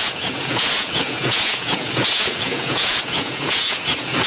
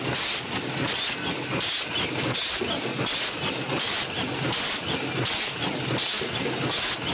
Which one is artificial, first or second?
first